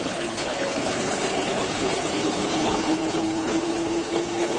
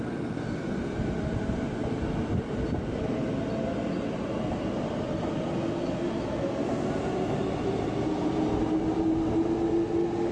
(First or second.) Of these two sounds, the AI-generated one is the first